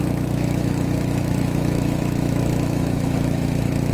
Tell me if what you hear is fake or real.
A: fake